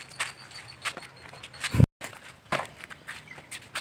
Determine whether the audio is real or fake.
real